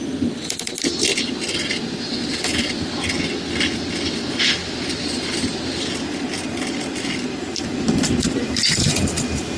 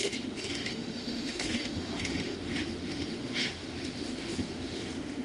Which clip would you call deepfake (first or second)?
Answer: second